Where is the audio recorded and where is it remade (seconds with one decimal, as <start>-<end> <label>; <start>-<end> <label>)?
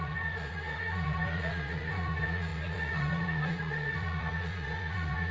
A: 0.0-5.3 remade